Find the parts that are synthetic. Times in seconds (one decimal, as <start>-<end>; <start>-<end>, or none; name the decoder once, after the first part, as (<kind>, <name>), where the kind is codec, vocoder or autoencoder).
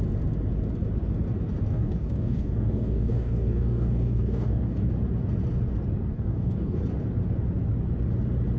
1.7-4.9 (codec, DAC); 6.1-6.8